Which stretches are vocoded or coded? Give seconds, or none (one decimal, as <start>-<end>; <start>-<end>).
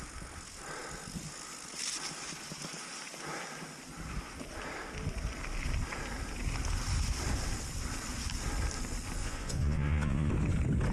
9.2-10.3